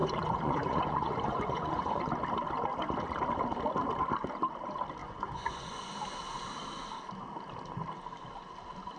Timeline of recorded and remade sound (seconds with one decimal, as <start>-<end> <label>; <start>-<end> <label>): 0.0-2.0 remade; 2.0-5.0 recorded; 5.0-5.9 remade; 5.9-9.0 recorded

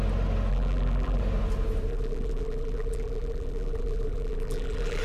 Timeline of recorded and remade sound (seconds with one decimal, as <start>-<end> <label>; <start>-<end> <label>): 0.0-0.5 recorded; 0.5-1.2 remade; 1.2-1.9 recorded; 1.9-5.0 remade

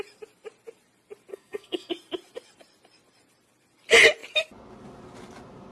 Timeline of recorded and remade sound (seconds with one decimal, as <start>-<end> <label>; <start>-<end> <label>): 0.0-1.3 recorded; 1.3-1.9 remade; 1.9-5.7 recorded

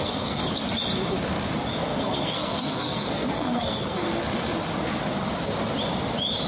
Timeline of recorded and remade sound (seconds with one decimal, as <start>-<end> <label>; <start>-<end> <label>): 0.0-0.5 remade; 0.5-1.9 recorded; 1.9-4.1 remade; 4.1-6.5 recorded

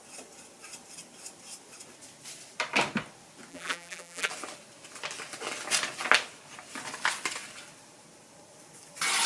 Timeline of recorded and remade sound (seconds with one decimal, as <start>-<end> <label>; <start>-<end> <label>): 0.0-3.5 recorded; 3.5-4.3 remade; 4.3-9.3 recorded

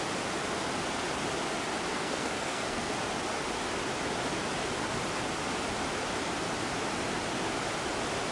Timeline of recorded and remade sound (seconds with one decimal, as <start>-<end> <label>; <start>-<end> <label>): 0.0-1.9 recorded; 1.9-2.9 remade; 2.9-8.3 recorded

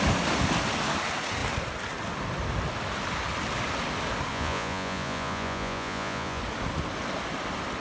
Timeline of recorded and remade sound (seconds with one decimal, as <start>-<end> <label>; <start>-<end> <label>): 0.0-4.3 recorded; 4.3-6.4 remade; 6.4-7.8 recorded

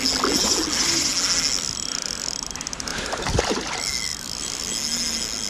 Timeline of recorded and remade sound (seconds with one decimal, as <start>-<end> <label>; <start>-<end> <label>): 0.0-4.1 recorded; 4.1-4.6 remade; 4.6-5.5 recorded